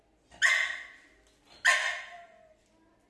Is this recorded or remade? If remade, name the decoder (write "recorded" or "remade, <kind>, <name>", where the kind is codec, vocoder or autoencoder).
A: recorded